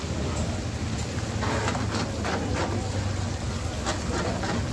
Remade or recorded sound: recorded